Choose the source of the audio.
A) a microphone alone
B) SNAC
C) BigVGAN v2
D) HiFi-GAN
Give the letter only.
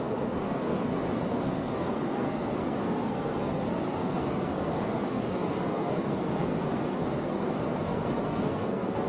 B